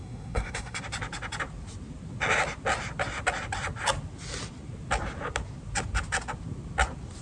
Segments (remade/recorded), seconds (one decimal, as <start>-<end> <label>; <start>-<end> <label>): 0.0-0.8 remade; 0.8-7.2 recorded